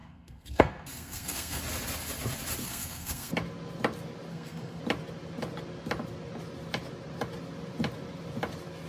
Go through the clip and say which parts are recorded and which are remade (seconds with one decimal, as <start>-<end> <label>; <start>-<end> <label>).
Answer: 0.0-1.6 remade; 1.6-2.6 recorded; 2.6-3.3 remade; 3.3-4.3 recorded; 4.3-4.8 remade; 4.8-8.9 recorded